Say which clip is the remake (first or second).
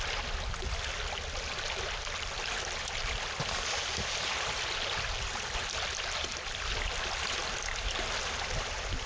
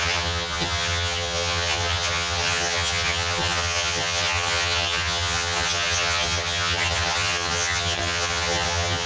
second